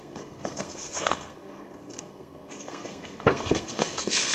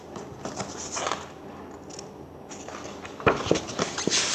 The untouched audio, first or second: second